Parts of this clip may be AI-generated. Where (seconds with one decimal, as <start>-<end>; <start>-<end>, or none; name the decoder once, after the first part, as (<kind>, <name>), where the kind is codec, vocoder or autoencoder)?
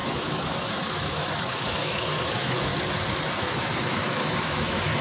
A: 0.0-2.7 (autoencoder, DAC-VAE); 3.4-5.0